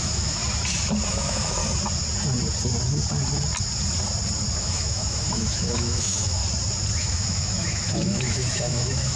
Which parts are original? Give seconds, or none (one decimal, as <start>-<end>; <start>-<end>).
0.4-1.1; 1.6-4.6; 6.4-7.0